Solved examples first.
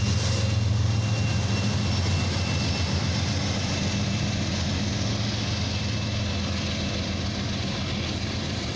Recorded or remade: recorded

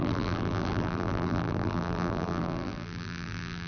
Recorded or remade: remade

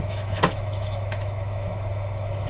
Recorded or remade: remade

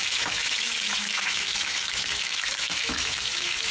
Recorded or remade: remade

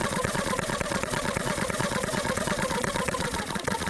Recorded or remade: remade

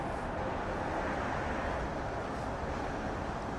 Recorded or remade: recorded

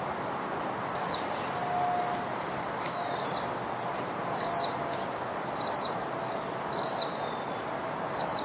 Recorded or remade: recorded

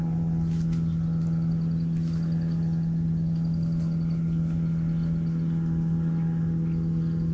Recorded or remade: recorded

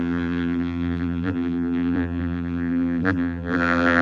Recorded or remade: remade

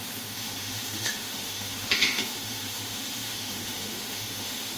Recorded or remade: remade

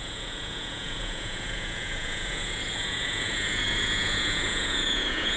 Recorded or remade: remade